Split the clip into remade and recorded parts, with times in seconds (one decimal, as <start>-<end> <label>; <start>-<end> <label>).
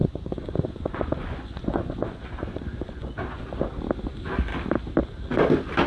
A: 0.0-3.4 remade; 3.4-5.9 recorded